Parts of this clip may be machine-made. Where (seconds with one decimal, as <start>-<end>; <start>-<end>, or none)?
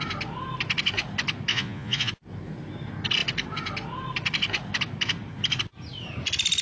1.5-2.1